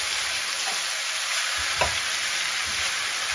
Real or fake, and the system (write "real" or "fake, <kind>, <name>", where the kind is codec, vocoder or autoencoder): real